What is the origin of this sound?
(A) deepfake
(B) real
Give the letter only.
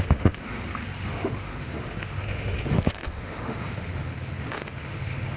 A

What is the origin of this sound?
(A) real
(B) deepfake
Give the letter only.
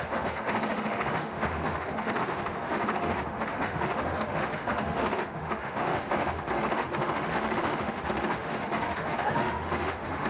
B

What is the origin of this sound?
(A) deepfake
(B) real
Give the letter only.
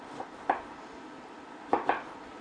B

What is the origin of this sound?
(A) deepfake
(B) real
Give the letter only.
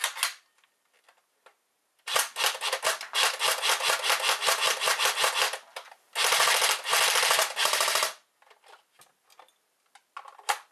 B